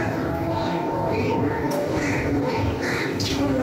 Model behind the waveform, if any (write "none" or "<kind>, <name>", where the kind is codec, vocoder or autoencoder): codec, DAC